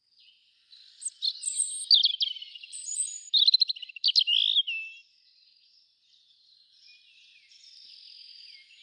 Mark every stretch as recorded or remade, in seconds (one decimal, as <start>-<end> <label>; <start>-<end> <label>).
0.0-2.5 recorded; 2.5-3.3 remade; 3.3-8.8 recorded